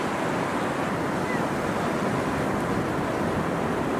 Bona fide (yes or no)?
yes